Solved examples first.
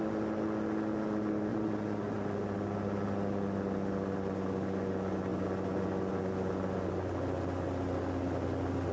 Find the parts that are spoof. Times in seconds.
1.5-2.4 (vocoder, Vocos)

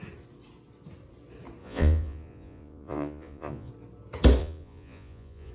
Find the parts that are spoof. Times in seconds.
1.6-3.7 (vocoder, Vocos); 4.4-5.5

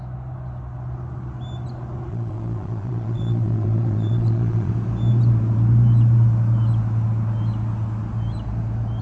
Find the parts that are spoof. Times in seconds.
2.1-4.7 (vocoder, Vocos)

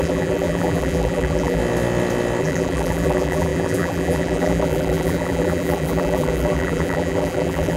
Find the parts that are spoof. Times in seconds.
0.0-1.6 (vocoder, BigVGAN v2); 2.4-7.8